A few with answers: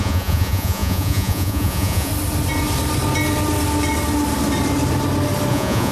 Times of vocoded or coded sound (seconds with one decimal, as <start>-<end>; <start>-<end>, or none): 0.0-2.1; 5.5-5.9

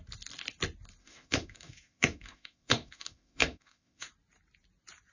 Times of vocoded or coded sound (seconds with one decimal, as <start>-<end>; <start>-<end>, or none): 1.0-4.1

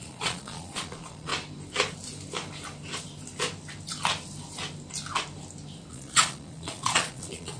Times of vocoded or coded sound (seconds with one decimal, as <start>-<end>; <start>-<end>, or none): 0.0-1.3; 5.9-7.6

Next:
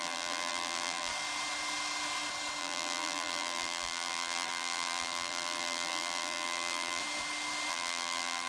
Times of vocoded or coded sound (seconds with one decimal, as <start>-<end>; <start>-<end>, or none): 0.0-1.1; 2.6-7.0; 7.7-8.5

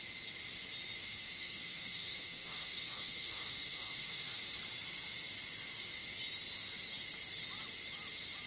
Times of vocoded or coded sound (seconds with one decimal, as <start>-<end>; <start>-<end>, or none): 1.0-4.6